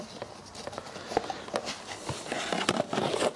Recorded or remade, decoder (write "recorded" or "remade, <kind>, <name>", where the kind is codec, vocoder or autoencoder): recorded